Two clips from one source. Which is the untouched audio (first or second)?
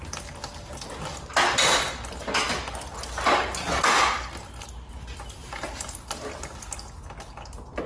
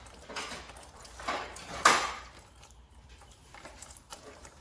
first